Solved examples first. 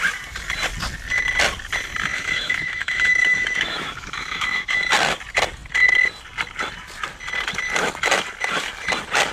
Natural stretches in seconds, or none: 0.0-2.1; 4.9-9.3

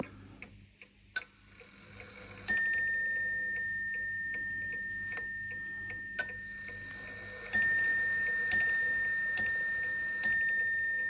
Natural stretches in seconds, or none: 0.0-11.1

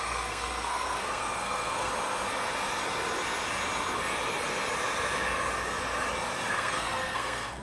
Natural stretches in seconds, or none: 1.9-6.5